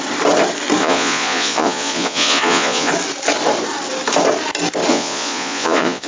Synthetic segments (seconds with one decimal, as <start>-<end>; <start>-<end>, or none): 0.8-2.9; 4.9-6.1